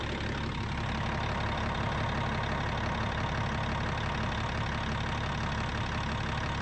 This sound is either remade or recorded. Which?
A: recorded